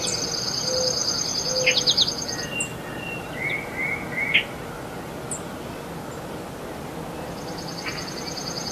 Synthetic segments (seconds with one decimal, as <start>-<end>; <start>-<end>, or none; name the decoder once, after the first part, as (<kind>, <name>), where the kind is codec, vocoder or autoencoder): none

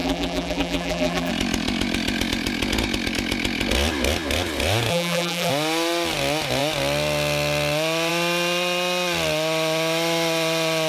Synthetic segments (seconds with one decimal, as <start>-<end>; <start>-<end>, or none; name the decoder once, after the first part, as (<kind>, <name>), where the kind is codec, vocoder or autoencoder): 0.0-1.3 (vocoder, BigVGAN v2); 4.9-5.5

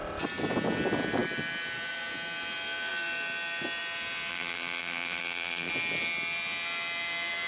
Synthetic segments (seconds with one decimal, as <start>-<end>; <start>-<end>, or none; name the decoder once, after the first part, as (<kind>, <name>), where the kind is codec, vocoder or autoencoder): 4.3-5.7 (vocoder, BigVGAN v2)